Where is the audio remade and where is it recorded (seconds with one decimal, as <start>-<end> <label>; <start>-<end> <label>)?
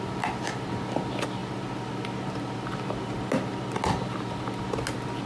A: 0.0-5.3 recorded